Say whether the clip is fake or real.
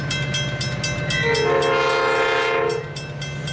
real